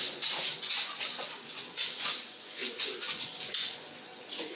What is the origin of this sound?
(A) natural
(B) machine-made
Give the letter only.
B